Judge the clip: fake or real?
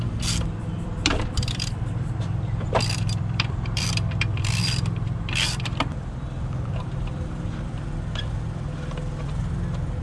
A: fake